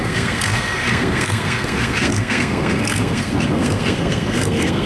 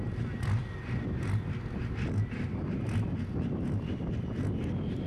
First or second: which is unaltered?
second